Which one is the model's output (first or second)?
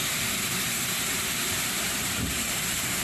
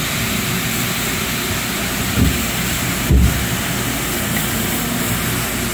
first